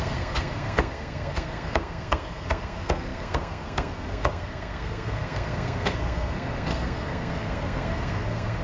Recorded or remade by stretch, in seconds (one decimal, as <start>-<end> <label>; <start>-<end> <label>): 0.0-8.6 remade